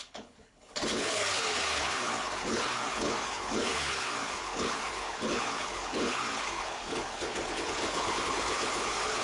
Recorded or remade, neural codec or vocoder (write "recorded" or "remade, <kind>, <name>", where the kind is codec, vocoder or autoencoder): remade, codec, HILCodec